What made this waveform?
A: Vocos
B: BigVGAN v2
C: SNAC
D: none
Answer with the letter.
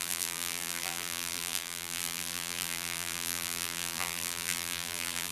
B